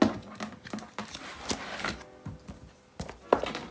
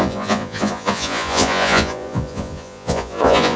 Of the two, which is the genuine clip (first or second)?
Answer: first